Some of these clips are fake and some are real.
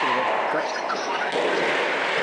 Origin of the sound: real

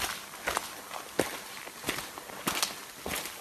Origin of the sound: real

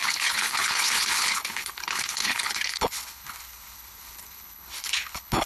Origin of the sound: fake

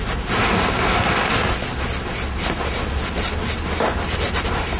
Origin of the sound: real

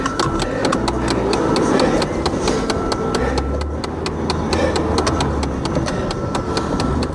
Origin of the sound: real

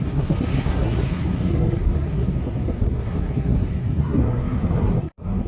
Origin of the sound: fake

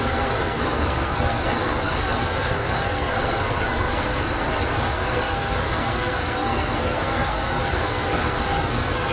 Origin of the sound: fake